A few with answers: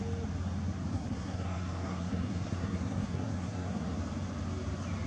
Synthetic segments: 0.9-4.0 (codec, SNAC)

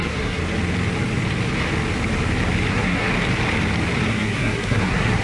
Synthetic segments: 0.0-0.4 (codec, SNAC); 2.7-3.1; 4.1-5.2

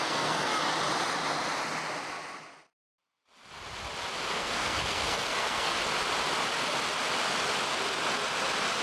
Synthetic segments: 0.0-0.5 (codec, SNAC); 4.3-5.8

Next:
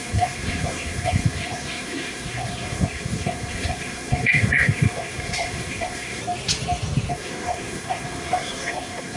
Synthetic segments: 0.0-6.2 (codec, SNAC); 7.1-9.2